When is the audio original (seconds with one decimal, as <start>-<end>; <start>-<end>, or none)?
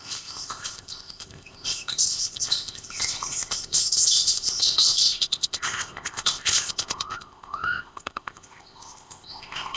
none